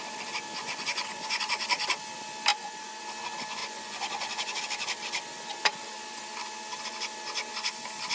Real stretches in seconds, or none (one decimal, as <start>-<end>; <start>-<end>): 0.0-0.6; 1.4-2.5; 3.0-3.6; 4.6-8.1